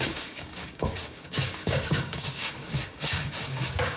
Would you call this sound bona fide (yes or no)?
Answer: no